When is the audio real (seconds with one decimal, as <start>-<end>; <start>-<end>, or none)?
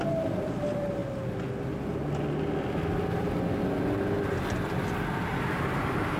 0.0-5.3